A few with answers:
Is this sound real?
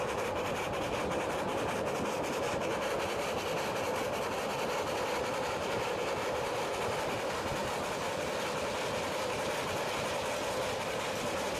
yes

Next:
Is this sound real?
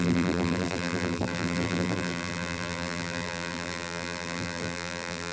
no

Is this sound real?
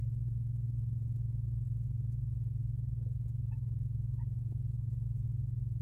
yes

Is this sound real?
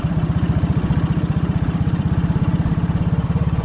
no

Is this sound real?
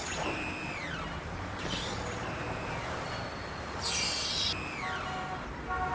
yes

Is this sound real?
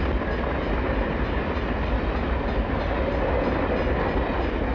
yes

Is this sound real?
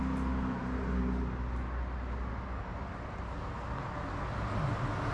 yes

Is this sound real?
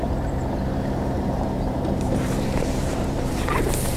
no